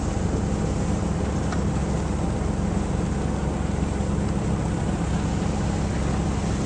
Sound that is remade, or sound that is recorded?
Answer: recorded